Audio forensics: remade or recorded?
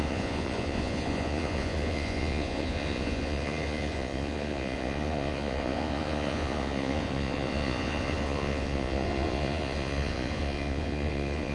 remade